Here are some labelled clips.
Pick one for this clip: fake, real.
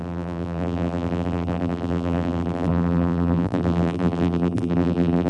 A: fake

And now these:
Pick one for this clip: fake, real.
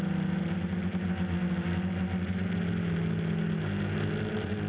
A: real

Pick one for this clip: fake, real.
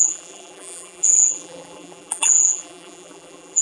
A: fake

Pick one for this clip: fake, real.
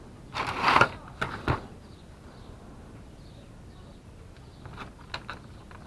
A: real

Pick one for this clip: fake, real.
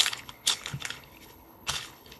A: fake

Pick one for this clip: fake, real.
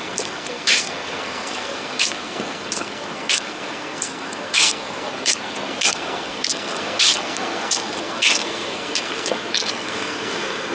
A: fake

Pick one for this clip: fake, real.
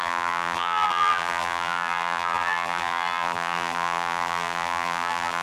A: fake